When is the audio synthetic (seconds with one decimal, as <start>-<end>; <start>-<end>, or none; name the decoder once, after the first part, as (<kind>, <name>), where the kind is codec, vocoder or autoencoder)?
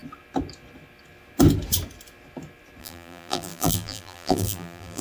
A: 2.8-5.0 (vocoder, BigVGAN v2)